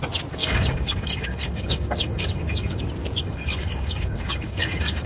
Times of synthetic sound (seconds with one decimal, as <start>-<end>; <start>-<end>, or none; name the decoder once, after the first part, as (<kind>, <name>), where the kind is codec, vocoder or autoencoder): 0.4-2.8 (codec, DAC); 3.2-5.1